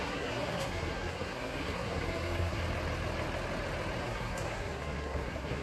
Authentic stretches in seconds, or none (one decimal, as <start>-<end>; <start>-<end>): 2.6-4.0